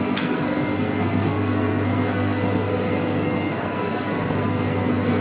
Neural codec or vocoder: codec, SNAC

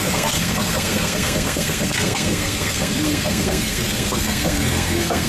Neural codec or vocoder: codec, SNAC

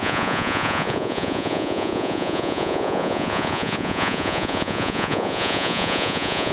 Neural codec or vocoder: vocoder, Vocos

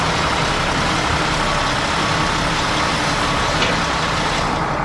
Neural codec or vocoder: none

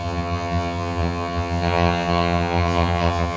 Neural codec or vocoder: vocoder, HiFi-GAN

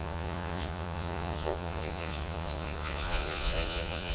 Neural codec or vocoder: vocoder, Vocos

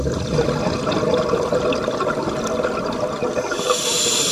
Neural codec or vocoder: none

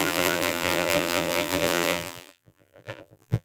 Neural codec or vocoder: vocoder, BigVGAN v2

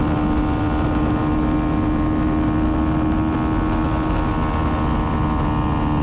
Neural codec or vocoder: none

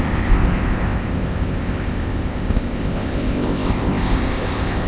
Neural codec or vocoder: codec, ZipCodec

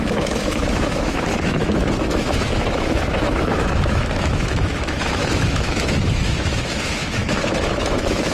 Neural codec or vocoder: autoencoder, DAC-VAE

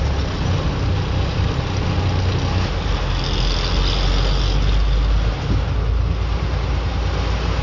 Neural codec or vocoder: none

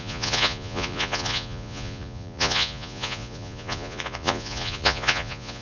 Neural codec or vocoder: vocoder, Vocos